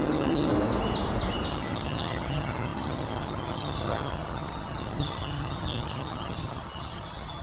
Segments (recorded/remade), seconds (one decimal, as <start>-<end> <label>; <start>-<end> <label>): 0.0-0.5 remade; 0.5-1.5 recorded; 1.5-7.4 remade